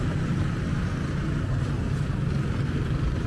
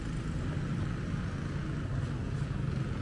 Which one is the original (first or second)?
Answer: second